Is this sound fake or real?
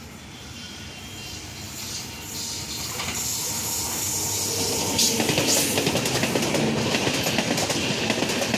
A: real